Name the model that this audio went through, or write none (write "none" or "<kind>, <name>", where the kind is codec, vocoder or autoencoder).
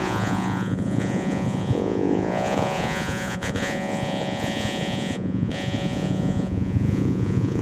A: vocoder, Vocos